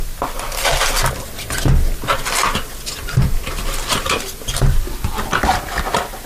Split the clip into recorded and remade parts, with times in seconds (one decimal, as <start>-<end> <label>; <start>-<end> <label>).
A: 0.0-6.3 recorded